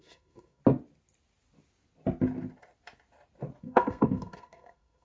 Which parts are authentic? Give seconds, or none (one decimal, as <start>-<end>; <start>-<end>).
0.6-3.6